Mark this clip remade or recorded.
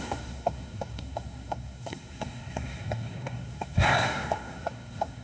remade